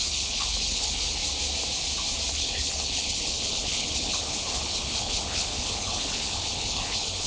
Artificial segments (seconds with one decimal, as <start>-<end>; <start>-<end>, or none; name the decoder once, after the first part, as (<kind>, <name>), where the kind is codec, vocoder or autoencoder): 0.0-1.2 (codec, HILCodec); 2.3-7.3